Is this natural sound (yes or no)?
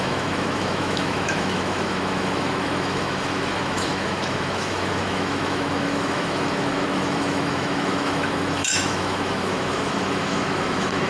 no